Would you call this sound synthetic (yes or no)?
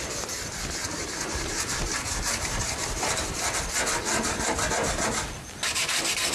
yes